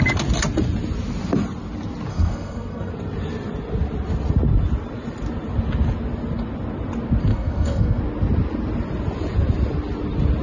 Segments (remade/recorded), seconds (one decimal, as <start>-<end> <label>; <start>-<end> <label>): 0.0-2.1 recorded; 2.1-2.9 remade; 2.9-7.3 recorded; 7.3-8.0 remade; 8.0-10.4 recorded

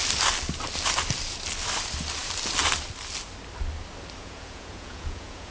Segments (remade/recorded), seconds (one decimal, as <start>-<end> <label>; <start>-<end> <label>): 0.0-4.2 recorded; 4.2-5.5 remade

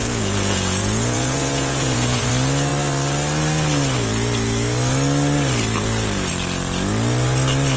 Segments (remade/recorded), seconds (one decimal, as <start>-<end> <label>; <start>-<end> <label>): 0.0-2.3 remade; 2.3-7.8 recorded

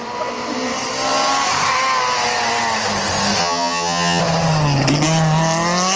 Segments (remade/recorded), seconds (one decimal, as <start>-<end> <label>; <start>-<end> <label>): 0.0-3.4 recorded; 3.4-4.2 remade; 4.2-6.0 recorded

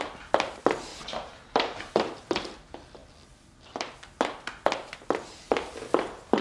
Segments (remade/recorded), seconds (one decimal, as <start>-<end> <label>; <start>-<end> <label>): 0.0-0.9 recorded; 0.9-2.2 remade; 2.2-6.4 recorded

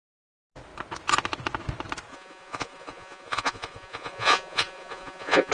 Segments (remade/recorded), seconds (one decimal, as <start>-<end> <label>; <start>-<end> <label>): 0.0-2.1 recorded; 2.1-5.5 remade

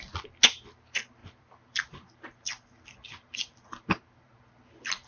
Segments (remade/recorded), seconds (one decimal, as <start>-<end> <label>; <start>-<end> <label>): 0.0-1.2 recorded; 1.2-4.3 remade; 4.3-5.1 recorded

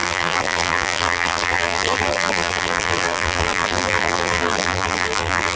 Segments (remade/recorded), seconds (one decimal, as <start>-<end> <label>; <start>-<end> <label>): 0.0-5.6 remade